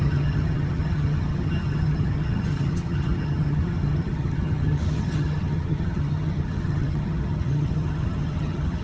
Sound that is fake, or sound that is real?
fake